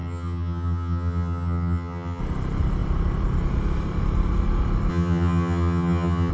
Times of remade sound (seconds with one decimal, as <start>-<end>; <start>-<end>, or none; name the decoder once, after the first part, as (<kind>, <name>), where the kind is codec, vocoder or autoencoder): 0.0-2.2 (vocoder, HiFi-GAN); 4.9-6.3